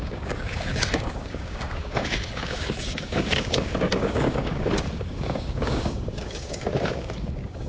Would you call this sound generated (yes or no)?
yes